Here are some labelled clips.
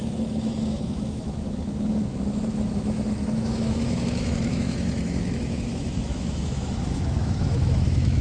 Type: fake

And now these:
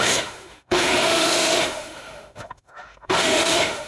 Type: fake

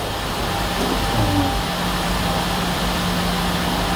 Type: real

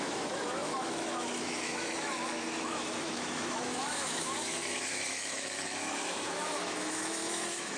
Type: fake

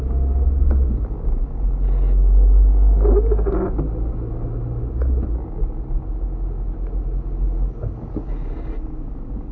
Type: real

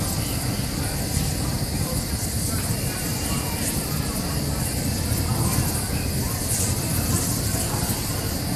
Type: real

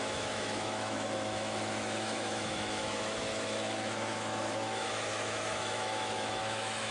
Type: fake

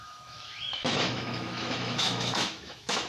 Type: fake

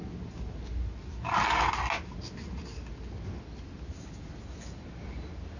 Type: real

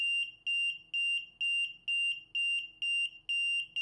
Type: real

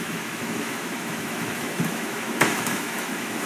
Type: fake